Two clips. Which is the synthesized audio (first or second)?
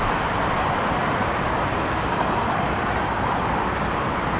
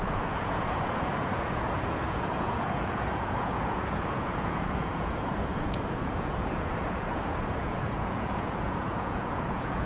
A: second